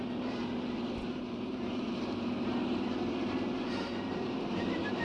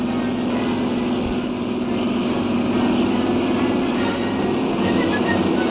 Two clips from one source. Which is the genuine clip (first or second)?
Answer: second